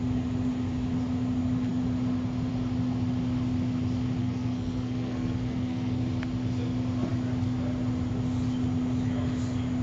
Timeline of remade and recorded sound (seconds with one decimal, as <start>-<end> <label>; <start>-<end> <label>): 0.0-4.2 recorded; 4.2-6.0 remade; 6.0-9.8 recorded